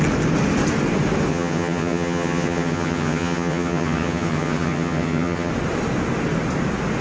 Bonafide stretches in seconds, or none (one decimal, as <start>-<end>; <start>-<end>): 0.0-1.3; 5.5-7.0